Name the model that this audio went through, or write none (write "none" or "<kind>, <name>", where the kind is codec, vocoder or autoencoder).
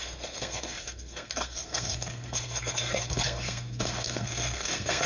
codec, SNAC